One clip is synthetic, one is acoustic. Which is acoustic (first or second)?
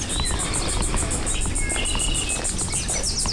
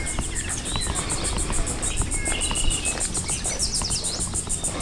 first